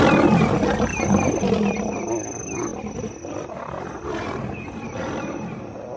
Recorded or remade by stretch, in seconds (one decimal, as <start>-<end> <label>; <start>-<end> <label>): 0.0-6.0 recorded